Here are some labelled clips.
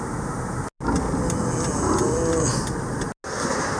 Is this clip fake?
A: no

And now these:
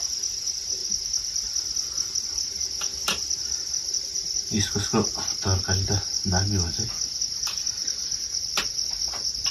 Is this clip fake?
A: no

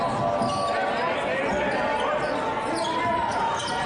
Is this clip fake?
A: no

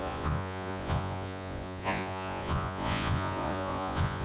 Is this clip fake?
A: yes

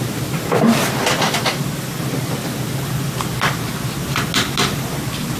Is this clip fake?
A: no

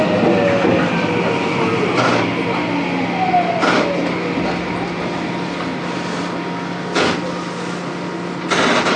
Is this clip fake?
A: no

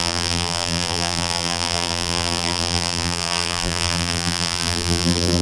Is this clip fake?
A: yes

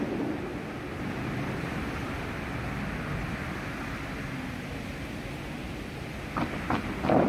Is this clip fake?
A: no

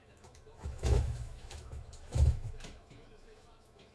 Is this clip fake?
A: yes